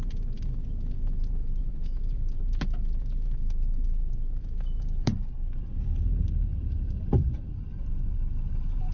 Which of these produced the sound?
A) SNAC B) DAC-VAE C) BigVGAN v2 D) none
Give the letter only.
C